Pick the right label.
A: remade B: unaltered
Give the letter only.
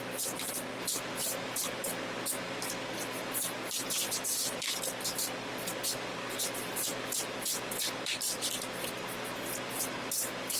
B